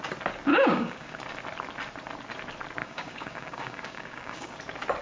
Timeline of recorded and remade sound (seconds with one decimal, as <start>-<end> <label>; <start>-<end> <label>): 0.0-0.5 recorded; 0.5-1.2 remade; 1.2-2.8 recorded; 2.8-4.6 remade; 4.6-5.0 recorded